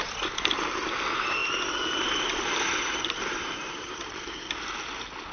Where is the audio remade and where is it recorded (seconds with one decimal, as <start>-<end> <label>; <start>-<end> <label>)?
0.0-5.3 recorded